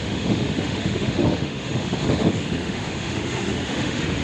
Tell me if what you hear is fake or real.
fake